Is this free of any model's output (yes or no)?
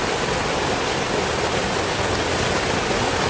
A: yes